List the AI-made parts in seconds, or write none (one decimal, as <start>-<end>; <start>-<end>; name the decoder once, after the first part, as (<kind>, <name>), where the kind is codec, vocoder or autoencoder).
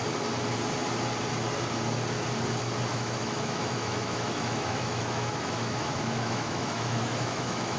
2.9-7.8 (autoencoder, DAC-VAE)